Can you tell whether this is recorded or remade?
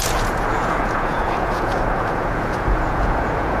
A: remade